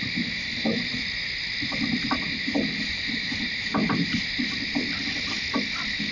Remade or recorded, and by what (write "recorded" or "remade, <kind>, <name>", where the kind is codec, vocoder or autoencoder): recorded